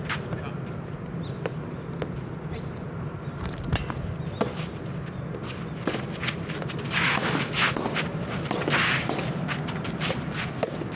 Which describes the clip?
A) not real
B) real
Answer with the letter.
B